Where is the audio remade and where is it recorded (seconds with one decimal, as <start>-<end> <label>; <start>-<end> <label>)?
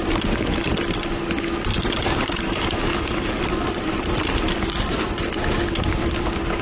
0.0-1.7 recorded; 1.7-3.4 remade; 3.4-6.6 recorded